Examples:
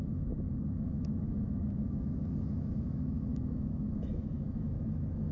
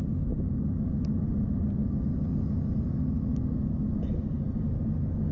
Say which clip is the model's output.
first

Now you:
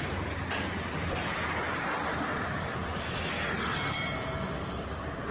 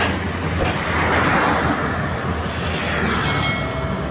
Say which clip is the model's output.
first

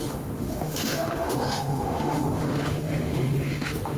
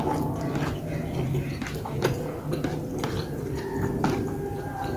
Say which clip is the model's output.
first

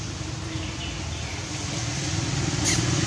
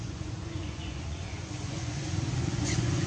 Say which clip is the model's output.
second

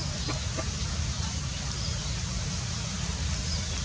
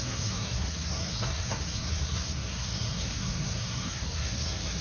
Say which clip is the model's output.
second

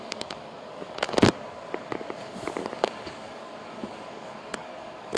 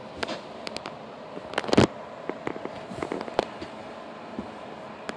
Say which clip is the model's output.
first